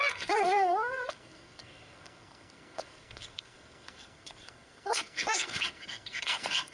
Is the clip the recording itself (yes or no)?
no